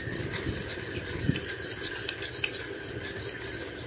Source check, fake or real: fake